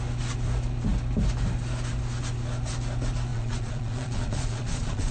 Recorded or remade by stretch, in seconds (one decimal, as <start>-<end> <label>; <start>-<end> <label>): 0.0-3.3 recorded; 3.3-5.1 remade